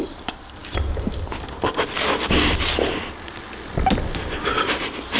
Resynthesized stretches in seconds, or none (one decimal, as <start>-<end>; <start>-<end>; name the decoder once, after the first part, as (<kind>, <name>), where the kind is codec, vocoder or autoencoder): none